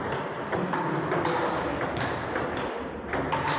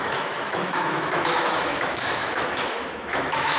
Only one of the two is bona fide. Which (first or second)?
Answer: first